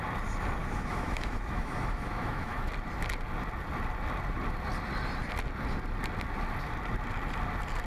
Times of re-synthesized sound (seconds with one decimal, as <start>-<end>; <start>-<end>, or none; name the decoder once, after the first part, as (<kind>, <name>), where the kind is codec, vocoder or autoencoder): 0.6-2.7 (autoencoder, DAC-VAE)